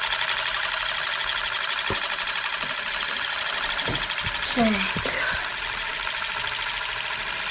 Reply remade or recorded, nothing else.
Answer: recorded